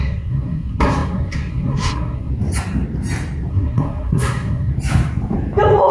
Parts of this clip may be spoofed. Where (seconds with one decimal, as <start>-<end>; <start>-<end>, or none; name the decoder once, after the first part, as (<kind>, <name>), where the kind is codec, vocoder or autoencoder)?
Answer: 0.0-2.3 (codec, SNAC); 3.5-4.7